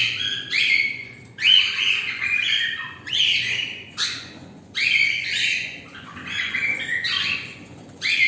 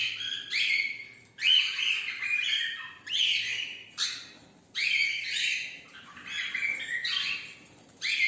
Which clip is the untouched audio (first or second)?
second